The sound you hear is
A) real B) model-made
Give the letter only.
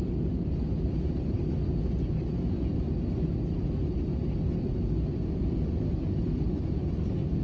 A